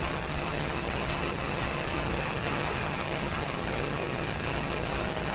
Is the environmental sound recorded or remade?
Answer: remade